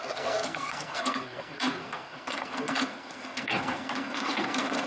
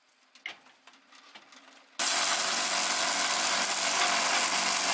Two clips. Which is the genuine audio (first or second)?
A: second